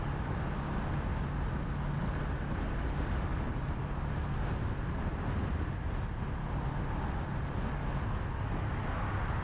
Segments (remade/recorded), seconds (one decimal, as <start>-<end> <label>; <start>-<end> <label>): 0.0-9.4 recorded